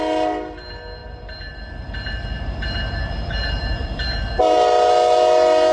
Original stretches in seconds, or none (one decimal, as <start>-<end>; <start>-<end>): 0.0-1.0; 1.6-3.4; 4.1-5.7

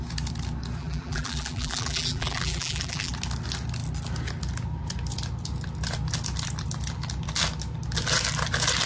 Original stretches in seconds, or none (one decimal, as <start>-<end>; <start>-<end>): 0.0-0.8; 3.1-8.9

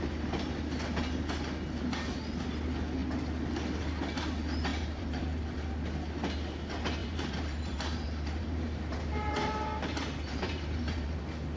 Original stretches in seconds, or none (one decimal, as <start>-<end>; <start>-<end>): 0.0-4.7; 5.7-7.0; 11.2-11.6

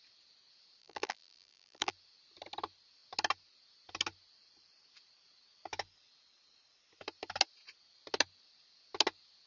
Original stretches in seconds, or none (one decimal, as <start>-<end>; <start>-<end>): 0.0-0.8; 1.9-9.5

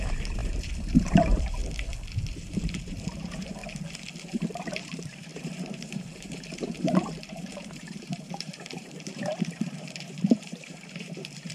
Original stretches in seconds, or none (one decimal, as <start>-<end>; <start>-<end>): 1.6-2.3; 3.6-4.3

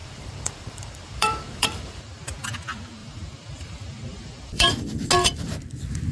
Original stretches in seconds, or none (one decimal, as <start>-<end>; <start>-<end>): 2.2-3.0; 4.7-6.1